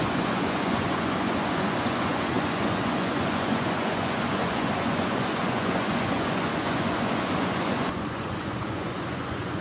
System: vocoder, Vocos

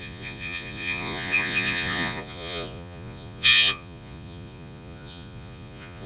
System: vocoder, Vocos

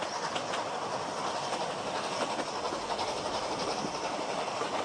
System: none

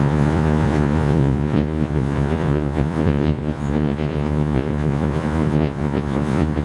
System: vocoder, Vocos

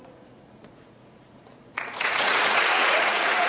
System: vocoder, Vocos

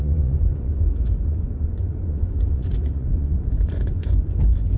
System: vocoder, Vocos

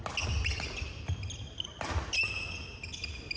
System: none